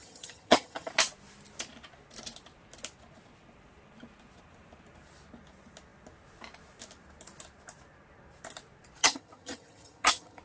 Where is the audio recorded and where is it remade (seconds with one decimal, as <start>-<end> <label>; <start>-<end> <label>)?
0.0-0.9 remade; 0.9-9.0 recorded; 9.0-10.4 remade